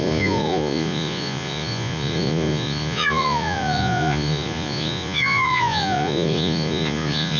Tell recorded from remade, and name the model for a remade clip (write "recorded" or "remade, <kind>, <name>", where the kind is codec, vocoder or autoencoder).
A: remade, vocoder, Vocos